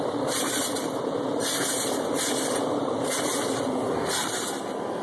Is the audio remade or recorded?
recorded